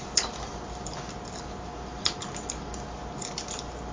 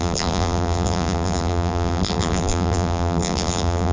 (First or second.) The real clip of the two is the first